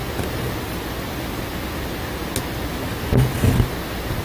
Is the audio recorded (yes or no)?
yes